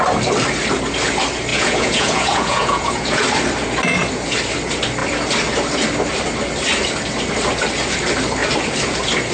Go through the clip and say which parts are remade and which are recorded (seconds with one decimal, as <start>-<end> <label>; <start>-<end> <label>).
0.0-1.5 recorded; 1.5-3.2 remade; 3.2-9.3 recorded